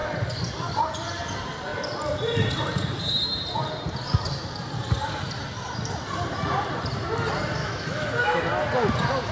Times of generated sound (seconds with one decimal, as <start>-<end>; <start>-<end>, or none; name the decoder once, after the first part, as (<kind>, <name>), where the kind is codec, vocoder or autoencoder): 7.6-8.4 (autoencoder, DAC-VAE)